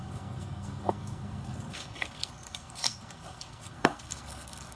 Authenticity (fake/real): fake